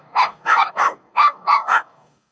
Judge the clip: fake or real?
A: fake